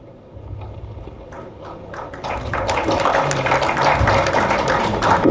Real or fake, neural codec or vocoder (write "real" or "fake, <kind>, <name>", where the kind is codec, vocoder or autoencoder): real